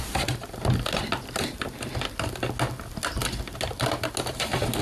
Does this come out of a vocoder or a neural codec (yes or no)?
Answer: no